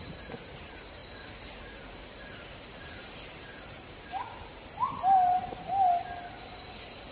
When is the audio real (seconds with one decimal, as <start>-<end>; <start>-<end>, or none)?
4.5-7.1